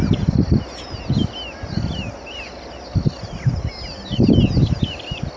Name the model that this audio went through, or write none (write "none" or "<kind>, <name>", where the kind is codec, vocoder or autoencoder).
none